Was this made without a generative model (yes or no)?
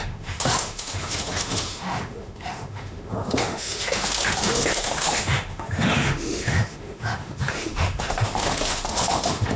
no